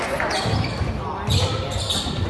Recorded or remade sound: recorded